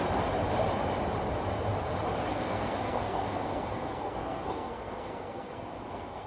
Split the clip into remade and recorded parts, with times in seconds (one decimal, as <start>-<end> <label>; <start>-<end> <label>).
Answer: 0.0-2.3 recorded; 2.3-6.3 remade